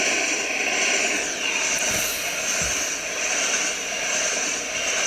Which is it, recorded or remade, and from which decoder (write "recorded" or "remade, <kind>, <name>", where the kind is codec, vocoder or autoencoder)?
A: recorded